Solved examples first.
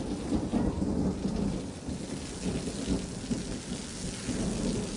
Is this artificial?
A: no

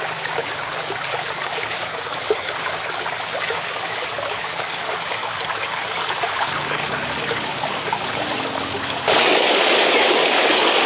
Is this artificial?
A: yes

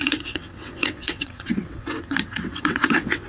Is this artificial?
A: yes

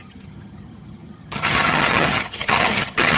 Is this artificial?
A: yes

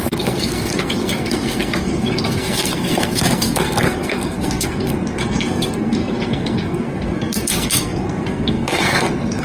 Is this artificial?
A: yes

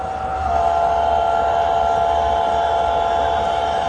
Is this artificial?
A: no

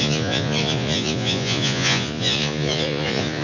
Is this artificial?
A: yes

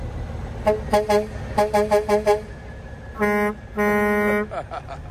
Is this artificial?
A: no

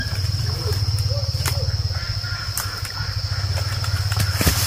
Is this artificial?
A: no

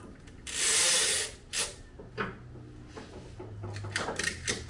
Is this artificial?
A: no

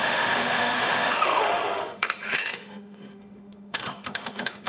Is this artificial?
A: yes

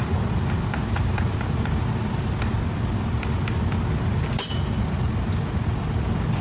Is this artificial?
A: no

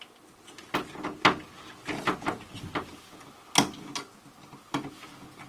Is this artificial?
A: no